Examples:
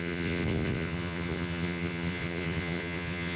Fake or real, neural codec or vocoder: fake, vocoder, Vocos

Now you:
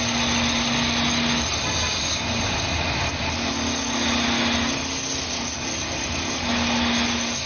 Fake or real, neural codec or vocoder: real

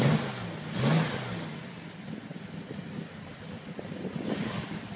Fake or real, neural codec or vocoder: real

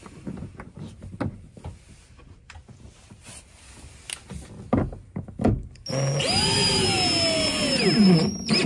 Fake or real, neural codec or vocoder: real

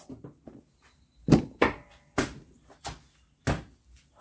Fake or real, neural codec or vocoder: real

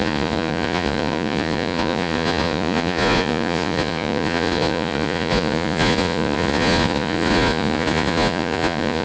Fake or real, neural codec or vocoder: fake, vocoder, Vocos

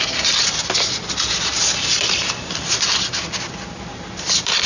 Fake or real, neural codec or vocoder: real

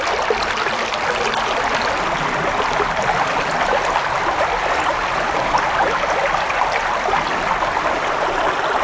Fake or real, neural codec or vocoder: real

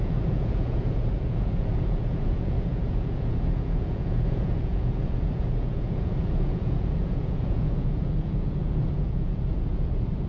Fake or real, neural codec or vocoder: fake, vocoder, Vocos